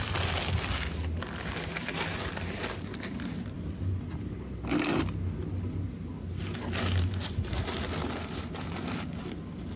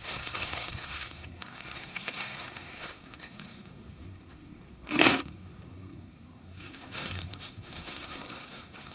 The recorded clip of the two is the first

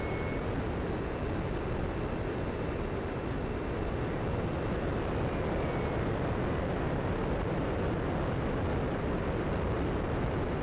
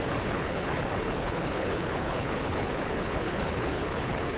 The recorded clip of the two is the first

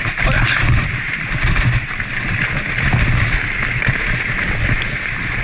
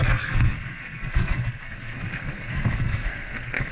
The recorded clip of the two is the first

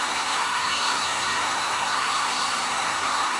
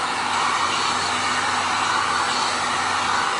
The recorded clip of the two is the second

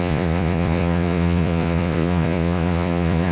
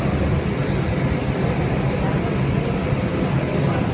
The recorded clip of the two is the second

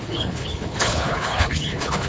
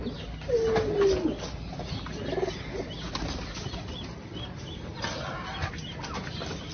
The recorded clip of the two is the second